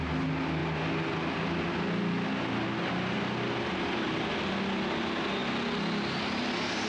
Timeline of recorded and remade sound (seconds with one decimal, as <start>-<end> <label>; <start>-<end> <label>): 0.0-6.9 recorded

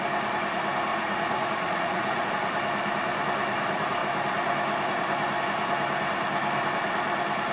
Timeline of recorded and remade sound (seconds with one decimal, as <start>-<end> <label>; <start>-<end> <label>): 0.0-0.9 recorded; 0.9-2.3 remade; 2.3-7.5 recorded